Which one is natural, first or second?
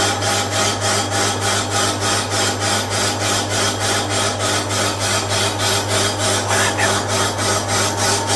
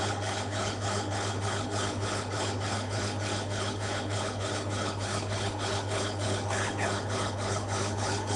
first